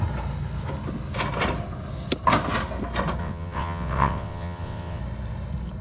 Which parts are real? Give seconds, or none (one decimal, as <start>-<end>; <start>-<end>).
0.0-3.2; 5.0-5.8